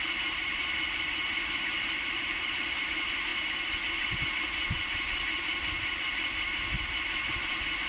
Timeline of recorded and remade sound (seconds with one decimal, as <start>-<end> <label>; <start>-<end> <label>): 0.0-7.9 recorded